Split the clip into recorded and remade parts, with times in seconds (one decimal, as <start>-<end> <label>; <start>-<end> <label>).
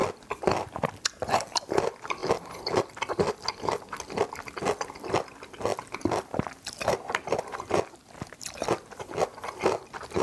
0.0-10.2 recorded